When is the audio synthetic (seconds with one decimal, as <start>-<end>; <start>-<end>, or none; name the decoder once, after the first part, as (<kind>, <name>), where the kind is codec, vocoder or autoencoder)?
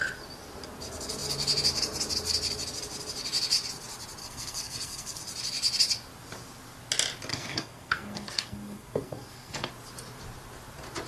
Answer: 4.2-5.2 (codec, SNAC); 7.3-9.7